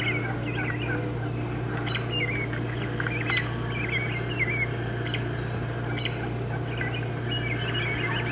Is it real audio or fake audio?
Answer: real